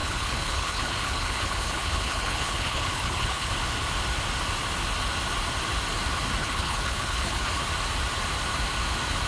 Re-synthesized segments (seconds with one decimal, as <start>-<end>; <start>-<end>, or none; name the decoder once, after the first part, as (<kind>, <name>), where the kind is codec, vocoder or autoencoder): 0.0-3.5 (codec, HILCodec); 6.4-7.5